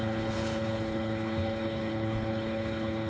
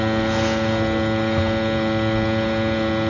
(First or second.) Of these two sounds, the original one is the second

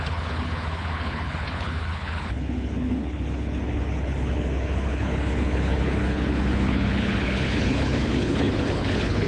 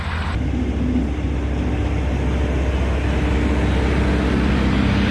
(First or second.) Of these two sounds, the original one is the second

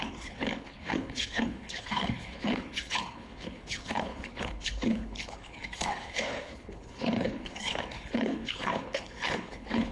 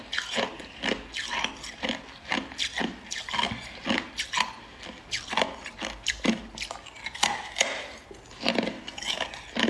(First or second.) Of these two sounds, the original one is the second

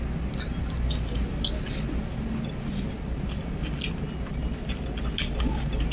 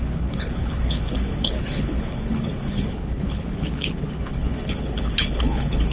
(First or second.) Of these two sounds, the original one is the first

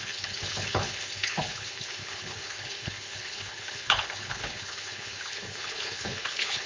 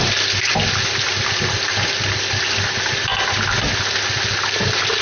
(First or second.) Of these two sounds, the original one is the second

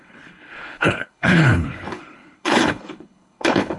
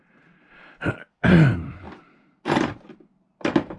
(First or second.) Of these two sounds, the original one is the second